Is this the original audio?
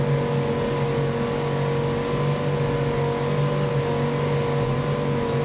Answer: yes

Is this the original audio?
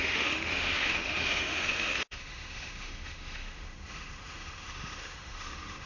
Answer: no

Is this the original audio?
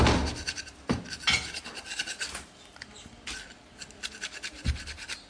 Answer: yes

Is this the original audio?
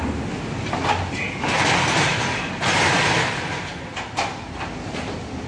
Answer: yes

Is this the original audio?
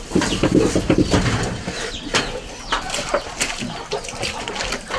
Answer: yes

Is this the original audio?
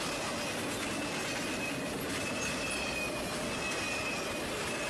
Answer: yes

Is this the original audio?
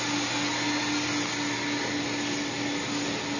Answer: yes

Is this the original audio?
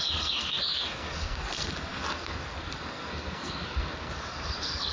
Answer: no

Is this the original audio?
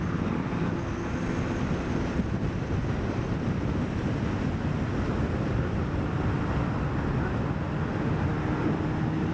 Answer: yes